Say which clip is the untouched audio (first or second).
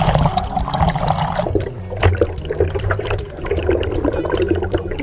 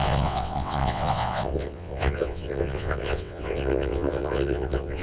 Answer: first